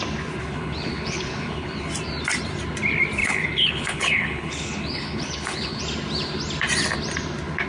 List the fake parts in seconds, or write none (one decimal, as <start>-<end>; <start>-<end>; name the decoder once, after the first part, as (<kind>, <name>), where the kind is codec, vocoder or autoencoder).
0.4-1.9 (codec, HILCodec); 3.2-5.8